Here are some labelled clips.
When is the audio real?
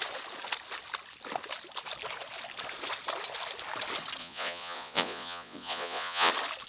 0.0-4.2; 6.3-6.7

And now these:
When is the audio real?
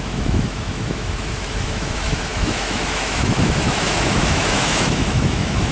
none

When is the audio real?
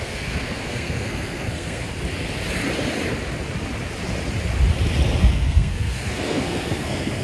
1.9-5.2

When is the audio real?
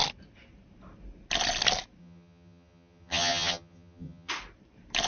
0.0-2.0; 4.3-5.1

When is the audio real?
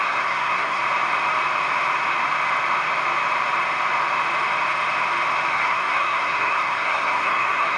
0.8-5.5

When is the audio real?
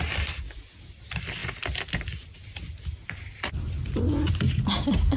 0.0-5.2